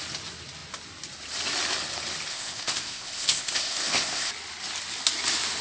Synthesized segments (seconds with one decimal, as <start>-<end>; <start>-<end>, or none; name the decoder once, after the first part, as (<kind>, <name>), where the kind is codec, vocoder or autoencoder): 2.3-4.3 (codec, ZipCodec)

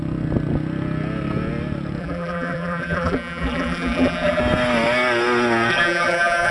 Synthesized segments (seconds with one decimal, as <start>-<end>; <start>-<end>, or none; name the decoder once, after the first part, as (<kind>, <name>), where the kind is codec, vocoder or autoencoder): 2.0-4.4 (vocoder, BigVGAN v2); 5.7-6.5

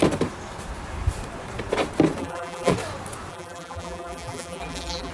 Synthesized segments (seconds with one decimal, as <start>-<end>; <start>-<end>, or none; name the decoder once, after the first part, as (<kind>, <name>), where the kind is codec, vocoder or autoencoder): 2.2-2.7 (vocoder, BigVGAN v2); 3.3-5.1